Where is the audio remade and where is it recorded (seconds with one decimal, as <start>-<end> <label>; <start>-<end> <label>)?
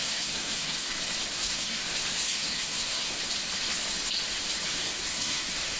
0.0-0.9 remade; 0.9-1.3 recorded; 1.3-3.2 remade; 3.2-4.7 recorded; 4.7-5.8 remade